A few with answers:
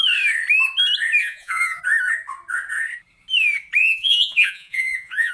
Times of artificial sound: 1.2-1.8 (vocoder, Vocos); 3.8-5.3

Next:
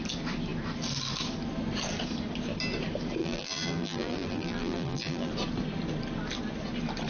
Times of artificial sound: 3.2-5.3 (vocoder, BigVGAN v2)